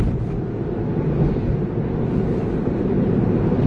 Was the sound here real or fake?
real